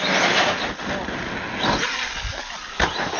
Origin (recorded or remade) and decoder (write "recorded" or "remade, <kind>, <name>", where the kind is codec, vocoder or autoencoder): recorded